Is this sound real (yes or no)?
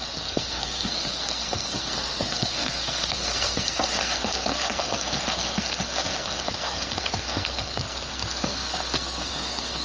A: no